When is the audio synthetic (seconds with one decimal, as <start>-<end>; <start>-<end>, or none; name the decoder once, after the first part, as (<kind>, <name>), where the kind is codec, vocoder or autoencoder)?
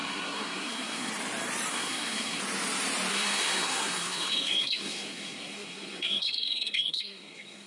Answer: 0.0-1.1 (codec, SNAC); 1.7-2.4; 3.1-7.7